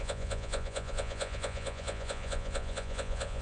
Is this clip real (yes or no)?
no